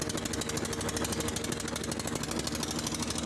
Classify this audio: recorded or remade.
recorded